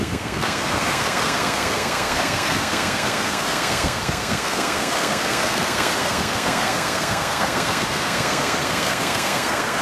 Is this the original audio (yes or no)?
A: no